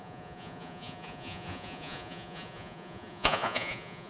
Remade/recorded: remade